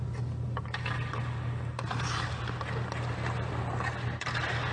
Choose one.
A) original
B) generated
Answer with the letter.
A